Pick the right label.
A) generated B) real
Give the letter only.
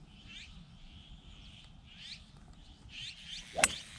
B